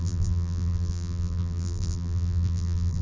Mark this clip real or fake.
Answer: fake